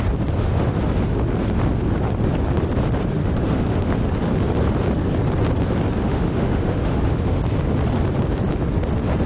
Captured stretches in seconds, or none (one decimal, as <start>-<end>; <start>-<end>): 0.0-0.4; 1.0-3.2; 3.9-6.0; 7.4-9.3